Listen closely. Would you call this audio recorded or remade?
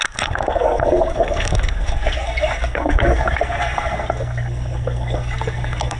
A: remade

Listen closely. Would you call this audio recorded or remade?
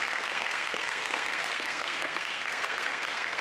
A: remade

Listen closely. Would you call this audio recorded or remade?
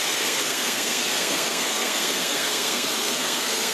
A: remade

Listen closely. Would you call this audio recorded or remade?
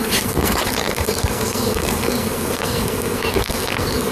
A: remade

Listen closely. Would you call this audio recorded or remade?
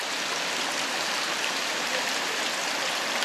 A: recorded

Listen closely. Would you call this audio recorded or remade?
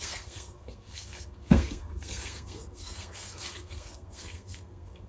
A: remade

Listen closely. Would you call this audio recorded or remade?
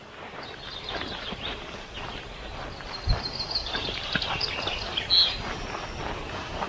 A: recorded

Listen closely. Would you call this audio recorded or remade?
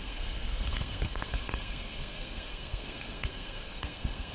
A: remade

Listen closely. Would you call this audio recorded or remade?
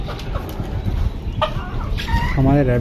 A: recorded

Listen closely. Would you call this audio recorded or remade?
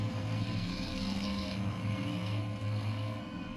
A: remade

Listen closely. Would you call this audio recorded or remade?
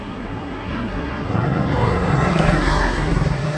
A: remade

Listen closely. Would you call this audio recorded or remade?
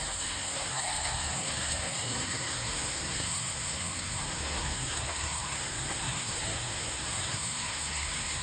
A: remade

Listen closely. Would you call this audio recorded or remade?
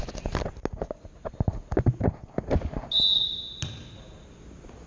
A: recorded